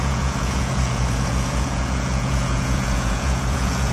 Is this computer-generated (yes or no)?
yes